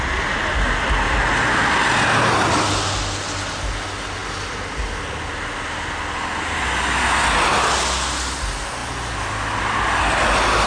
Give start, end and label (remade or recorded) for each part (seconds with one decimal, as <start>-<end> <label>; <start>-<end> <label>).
0.0-10.7 recorded